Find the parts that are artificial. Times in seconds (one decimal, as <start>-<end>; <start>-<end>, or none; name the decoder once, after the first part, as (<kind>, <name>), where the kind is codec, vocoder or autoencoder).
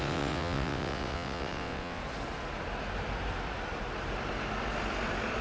0.0-2.0 (vocoder, WaveNeXt)